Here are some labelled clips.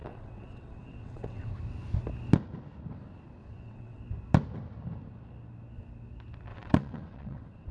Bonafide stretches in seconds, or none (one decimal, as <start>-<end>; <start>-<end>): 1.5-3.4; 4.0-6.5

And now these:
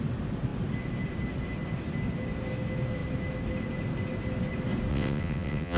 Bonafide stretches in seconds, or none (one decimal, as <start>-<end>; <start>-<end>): 0.0-4.9

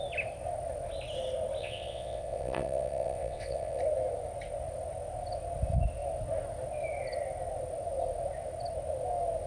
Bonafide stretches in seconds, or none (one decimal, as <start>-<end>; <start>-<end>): 0.0-1.6; 3.8-9.5

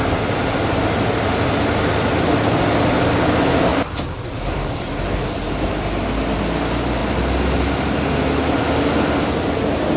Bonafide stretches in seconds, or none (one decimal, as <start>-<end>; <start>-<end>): 0.0-10.0

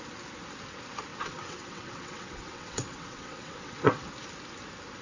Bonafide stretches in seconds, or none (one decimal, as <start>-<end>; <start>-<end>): 0.0-1.1; 4.1-5.0